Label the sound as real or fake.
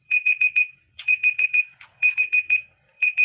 fake